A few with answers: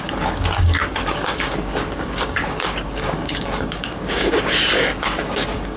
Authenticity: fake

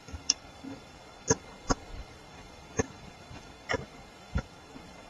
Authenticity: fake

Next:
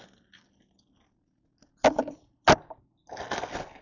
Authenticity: real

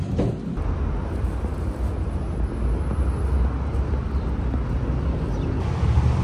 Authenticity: real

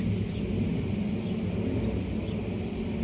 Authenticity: real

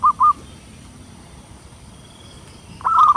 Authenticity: real